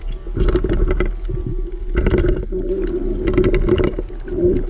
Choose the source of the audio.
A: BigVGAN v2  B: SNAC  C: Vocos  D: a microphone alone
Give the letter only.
D